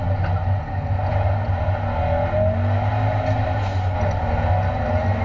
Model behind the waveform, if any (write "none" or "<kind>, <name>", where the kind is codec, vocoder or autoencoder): none